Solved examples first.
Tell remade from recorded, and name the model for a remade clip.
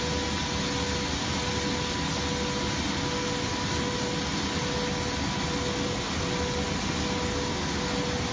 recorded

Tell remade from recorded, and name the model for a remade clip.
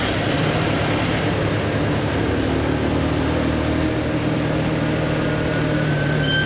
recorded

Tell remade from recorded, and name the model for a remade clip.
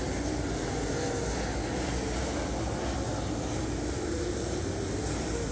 recorded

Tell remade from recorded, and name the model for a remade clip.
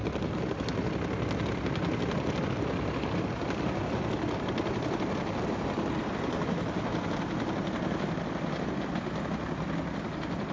recorded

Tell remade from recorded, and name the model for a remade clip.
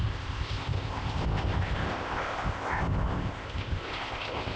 remade, codec, ZipCodec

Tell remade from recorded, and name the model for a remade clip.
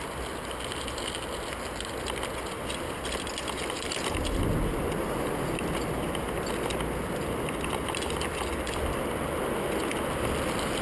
recorded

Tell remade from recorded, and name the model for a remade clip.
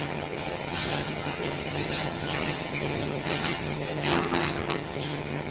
remade, vocoder, HiFi-GAN